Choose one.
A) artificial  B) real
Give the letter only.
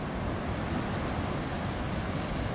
B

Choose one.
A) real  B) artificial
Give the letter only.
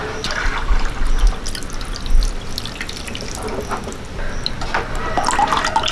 A